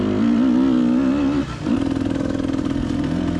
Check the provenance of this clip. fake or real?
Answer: real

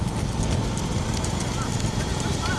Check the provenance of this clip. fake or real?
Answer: real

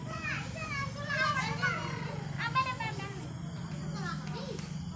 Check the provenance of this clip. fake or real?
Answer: real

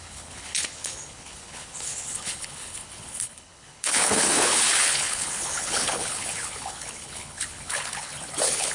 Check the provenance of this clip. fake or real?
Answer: fake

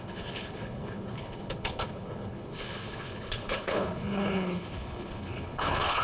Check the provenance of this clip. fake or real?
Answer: fake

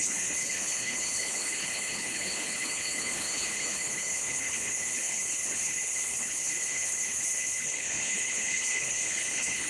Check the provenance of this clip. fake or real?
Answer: fake